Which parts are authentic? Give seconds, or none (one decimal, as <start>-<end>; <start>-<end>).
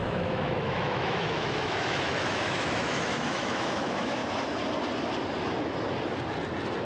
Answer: 4.2-6.8